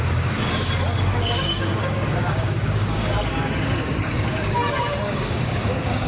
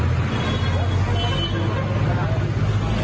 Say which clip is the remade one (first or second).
first